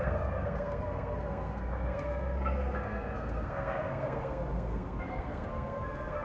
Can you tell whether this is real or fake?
fake